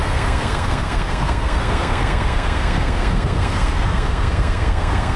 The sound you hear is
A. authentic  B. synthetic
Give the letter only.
B